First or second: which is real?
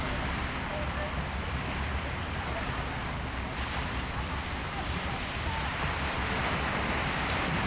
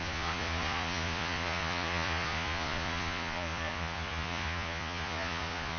first